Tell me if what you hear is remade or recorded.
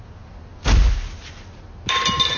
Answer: recorded